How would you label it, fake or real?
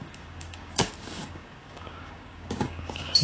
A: fake